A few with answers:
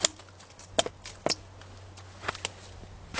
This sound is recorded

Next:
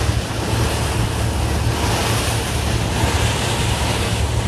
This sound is recorded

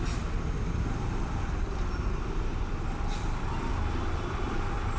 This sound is recorded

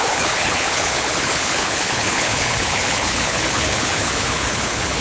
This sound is remade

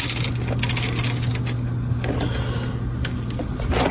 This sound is recorded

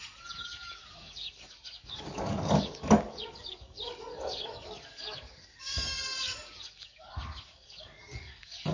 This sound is remade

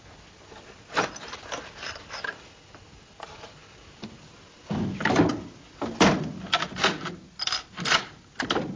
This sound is recorded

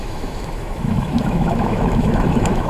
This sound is remade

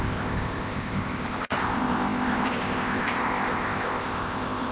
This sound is remade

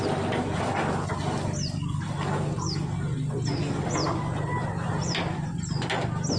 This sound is recorded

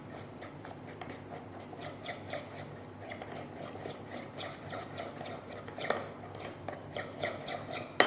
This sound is recorded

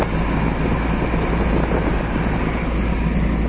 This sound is recorded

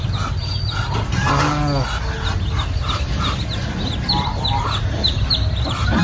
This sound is recorded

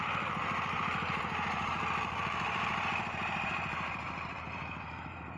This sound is remade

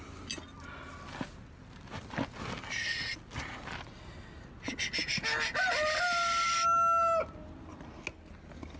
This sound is recorded